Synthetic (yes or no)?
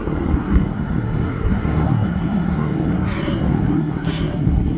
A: yes